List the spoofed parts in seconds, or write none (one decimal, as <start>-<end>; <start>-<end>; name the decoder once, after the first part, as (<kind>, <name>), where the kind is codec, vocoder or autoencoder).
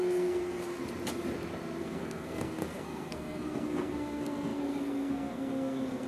0.0-0.8 (codec, SNAC); 1.8-6.1